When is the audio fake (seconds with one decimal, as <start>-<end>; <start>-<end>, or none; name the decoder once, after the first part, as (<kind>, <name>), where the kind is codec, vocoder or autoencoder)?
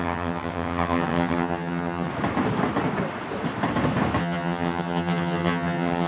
0.0-2.1 (vocoder, HiFi-GAN); 4.2-6.1